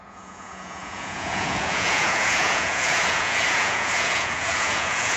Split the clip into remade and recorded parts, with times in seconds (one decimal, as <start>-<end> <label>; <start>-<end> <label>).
0.0-5.2 remade